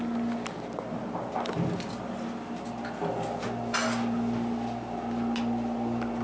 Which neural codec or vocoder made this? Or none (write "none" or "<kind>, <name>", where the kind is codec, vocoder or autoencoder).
none